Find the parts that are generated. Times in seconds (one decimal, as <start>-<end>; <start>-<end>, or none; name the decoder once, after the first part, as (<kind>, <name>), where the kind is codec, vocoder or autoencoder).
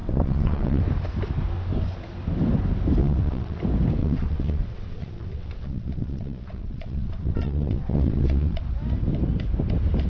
0.0-0.8 (vocoder, WaveNeXt); 3.0-3.6; 4.0-8.6